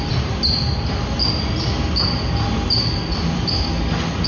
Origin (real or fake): real